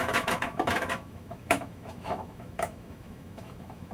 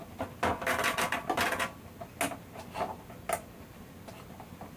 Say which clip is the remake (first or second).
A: first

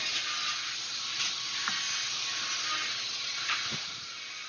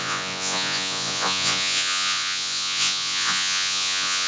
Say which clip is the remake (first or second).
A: second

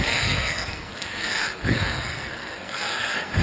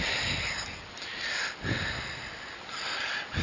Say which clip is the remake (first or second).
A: first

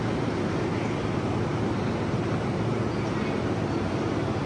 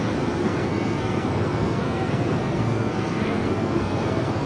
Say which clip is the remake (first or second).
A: second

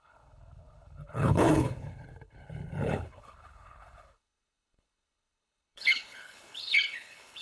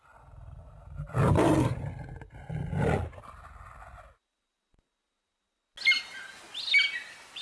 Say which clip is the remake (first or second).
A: first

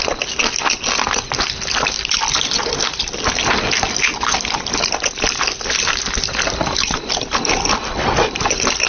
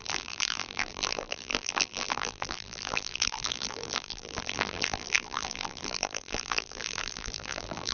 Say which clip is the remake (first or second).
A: second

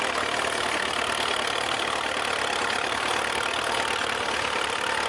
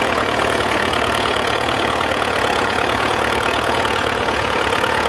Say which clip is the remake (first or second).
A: second